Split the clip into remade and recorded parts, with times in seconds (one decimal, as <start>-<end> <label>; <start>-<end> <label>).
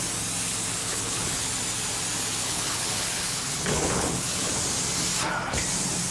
0.0-0.8 recorded; 0.8-1.5 remade; 1.5-2.4 recorded; 2.4-4.5 remade; 4.5-6.1 recorded